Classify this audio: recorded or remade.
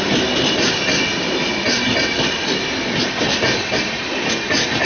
recorded